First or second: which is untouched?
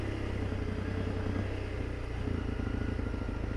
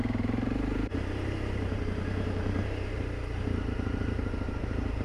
first